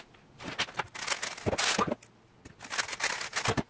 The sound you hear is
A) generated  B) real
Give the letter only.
B